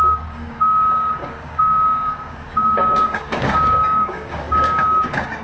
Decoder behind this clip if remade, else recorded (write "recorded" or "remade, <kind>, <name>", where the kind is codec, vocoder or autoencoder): remade, codec, DAC